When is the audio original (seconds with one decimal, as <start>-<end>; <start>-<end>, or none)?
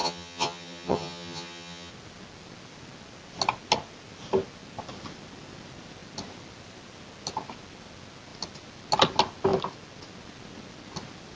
1.9-11.4